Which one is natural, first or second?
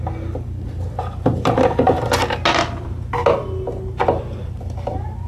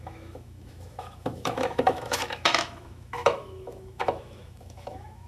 first